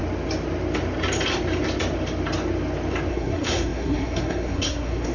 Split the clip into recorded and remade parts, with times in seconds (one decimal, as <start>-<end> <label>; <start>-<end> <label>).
0.0-3.1 recorded; 3.1-5.1 remade